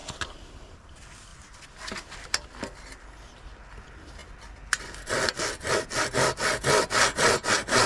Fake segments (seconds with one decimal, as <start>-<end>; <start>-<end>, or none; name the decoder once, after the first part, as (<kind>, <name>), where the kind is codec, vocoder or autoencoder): none